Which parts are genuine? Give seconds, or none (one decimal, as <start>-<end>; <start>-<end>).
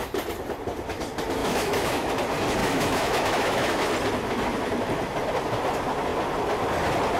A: 0.0-1.4; 2.1-2.6; 3.9-7.2